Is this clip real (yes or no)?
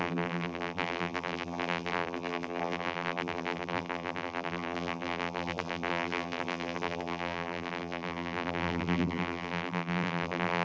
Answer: no